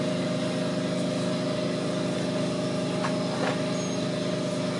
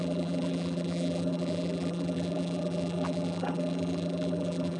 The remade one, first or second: second